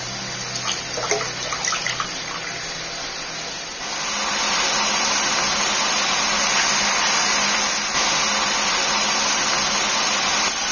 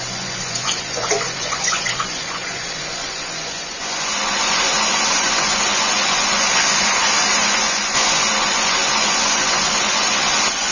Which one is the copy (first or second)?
second